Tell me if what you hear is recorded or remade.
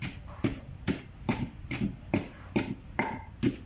remade